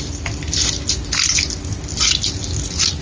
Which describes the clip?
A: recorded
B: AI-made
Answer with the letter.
A